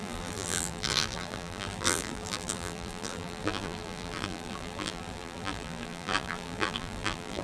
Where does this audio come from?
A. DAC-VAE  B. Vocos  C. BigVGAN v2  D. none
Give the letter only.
C